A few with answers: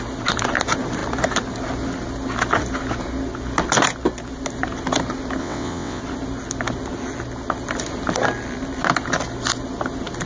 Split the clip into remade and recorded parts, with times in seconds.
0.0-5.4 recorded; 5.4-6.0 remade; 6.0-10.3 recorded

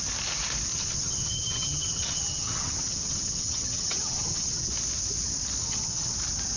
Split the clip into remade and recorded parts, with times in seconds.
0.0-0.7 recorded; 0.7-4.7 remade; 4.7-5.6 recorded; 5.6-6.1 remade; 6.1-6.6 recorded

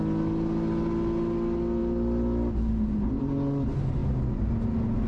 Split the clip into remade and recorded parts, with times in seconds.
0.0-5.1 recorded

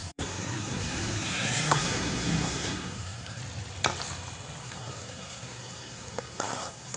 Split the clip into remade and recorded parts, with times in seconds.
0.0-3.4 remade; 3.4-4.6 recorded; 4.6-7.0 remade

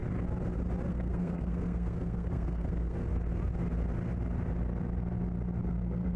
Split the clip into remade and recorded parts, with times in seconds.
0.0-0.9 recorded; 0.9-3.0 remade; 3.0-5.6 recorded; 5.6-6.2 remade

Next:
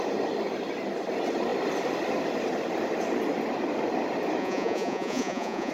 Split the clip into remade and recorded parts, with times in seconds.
0.0-4.4 recorded; 4.4-5.7 remade

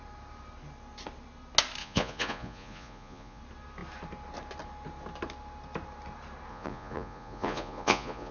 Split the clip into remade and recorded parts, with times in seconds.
0.0-1.8 recorded; 1.8-3.4 remade; 3.4-6.5 recorded; 6.5-8.3 remade